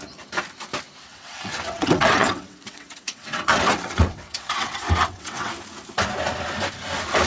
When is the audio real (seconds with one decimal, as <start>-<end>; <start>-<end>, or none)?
0.0-1.1; 5.5-7.3